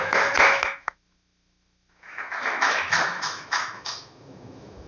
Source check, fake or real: fake